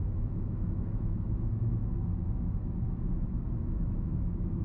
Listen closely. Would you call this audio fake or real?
fake